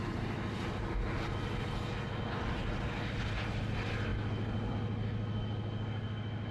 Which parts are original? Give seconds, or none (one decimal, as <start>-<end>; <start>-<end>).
0.0-6.5